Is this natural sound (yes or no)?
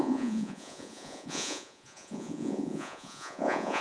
no